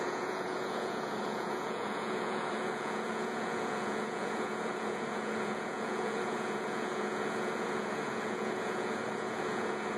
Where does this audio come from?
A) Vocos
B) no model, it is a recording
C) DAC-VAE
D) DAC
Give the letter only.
A